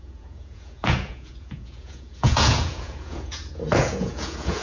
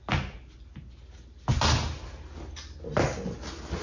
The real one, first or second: second